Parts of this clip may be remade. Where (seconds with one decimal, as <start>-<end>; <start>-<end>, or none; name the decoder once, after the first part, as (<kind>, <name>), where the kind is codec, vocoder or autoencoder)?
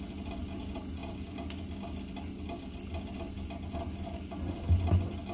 none